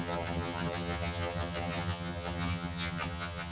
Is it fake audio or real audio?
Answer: fake